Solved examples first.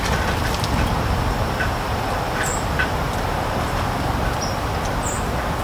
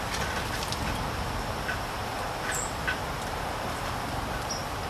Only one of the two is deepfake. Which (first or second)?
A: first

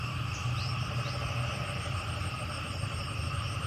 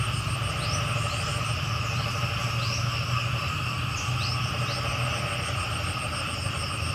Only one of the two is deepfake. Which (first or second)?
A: first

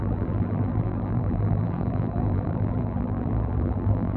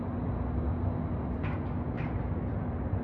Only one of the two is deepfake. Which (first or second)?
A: first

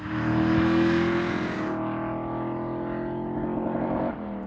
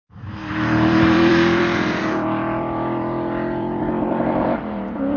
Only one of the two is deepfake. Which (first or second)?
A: second